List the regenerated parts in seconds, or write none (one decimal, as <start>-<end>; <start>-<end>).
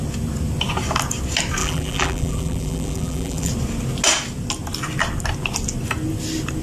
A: 1.6-3.5